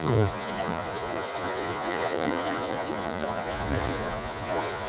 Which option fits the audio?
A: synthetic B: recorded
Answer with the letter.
A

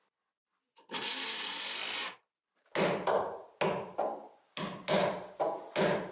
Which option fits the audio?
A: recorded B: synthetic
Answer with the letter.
A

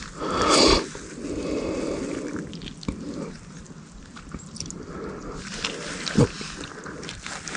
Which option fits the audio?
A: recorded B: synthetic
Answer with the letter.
A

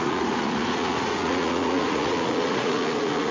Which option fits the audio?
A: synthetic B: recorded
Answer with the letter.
A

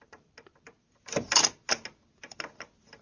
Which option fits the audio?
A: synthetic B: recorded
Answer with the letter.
B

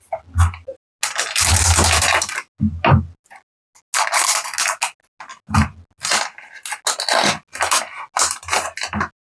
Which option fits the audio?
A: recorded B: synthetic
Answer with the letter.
A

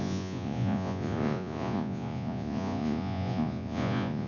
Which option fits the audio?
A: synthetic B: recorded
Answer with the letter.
A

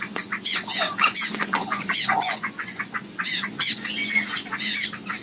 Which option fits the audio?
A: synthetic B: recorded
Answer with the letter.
A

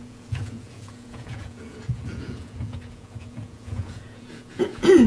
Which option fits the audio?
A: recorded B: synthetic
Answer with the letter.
B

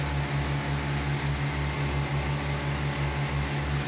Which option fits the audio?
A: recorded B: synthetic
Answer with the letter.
A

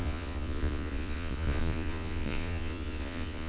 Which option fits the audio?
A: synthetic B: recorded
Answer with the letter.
A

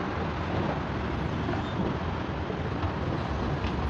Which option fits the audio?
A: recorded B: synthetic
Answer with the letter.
A